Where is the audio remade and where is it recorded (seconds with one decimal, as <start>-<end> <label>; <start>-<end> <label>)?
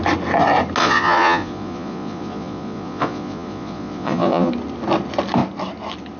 0.0-0.8 recorded; 0.8-4.5 remade; 4.5-6.2 recorded